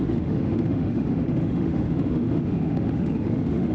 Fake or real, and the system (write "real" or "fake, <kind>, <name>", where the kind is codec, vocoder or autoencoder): fake, autoencoder, DAC-VAE